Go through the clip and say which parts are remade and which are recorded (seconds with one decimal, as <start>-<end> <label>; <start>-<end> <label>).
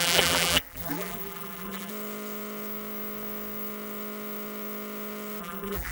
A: 0.0-1.9 remade; 1.9-5.4 recorded; 5.4-5.9 remade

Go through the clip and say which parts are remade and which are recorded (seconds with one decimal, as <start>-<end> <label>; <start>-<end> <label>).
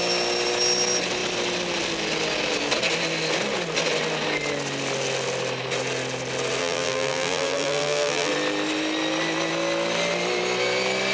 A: 0.0-6.6 recorded; 6.6-8.3 remade; 8.3-11.1 recorded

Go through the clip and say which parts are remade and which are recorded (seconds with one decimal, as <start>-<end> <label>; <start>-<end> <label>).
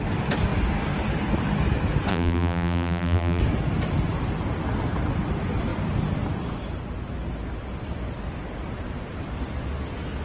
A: 0.0-2.1 recorded; 2.1-3.4 remade; 3.4-10.2 recorded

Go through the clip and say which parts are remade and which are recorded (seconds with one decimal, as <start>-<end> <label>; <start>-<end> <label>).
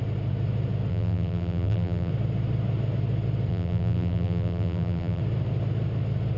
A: 0.0-0.9 recorded; 0.9-2.1 remade; 2.1-3.5 recorded; 3.5-5.2 remade; 5.2-6.4 recorded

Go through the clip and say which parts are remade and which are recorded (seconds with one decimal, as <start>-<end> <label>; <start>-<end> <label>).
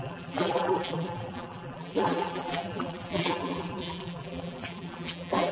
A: 0.0-5.5 remade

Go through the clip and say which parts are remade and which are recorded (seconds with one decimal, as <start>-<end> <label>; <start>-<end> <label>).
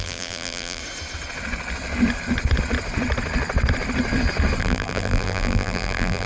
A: 0.0-0.8 remade; 0.8-4.6 recorded; 4.6-6.3 remade